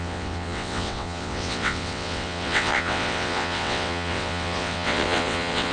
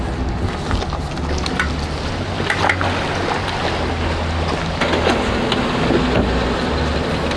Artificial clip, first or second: first